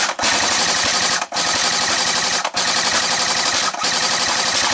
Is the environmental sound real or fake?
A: real